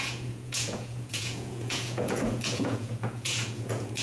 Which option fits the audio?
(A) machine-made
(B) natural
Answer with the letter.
A